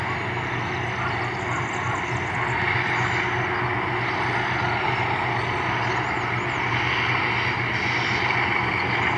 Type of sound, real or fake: real